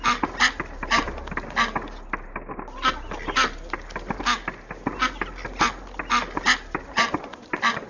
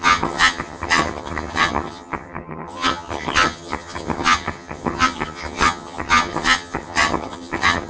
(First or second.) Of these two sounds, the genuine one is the first